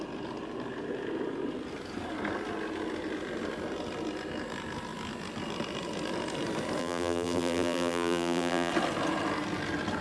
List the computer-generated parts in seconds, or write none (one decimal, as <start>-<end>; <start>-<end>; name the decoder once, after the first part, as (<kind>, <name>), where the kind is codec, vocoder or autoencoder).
6.8-8.7 (vocoder, BigVGAN v2)